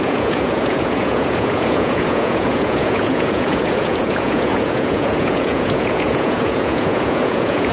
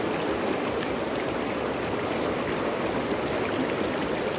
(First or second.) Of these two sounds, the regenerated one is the first